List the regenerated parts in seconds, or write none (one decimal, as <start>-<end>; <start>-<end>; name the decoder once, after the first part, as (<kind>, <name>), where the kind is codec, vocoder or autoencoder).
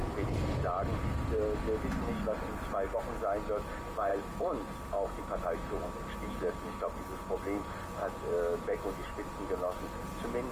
none